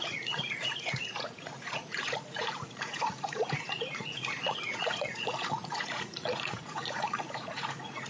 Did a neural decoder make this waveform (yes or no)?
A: yes